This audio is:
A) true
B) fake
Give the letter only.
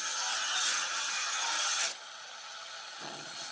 B